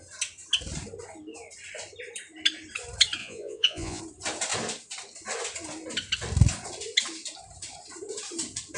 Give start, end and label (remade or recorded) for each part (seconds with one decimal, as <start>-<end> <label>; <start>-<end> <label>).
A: 0.0-3.2 recorded; 3.2-4.0 remade; 4.0-8.8 recorded